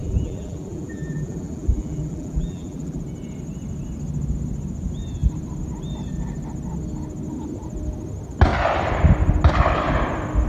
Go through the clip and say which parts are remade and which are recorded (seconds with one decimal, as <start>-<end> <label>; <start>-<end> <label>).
0.0-3.0 remade; 3.0-10.5 recorded

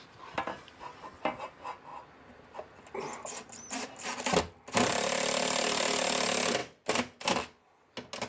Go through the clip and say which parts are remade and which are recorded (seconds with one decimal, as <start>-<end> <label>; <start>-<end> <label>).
0.0-8.3 recorded